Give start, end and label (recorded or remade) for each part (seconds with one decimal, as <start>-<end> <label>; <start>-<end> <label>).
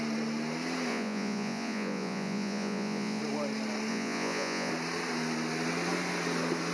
0.0-0.9 recorded; 0.9-3.2 remade; 3.2-3.9 recorded; 3.9-4.7 remade; 4.7-6.7 recorded